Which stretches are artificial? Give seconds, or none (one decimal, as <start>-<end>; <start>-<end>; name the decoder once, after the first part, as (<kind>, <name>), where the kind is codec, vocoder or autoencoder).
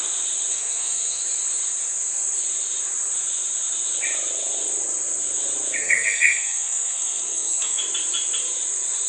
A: 0.5-1.2 (codec, SNAC); 5.8-7.8